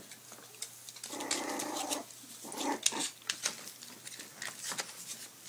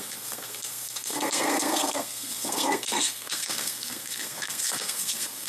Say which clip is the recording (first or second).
first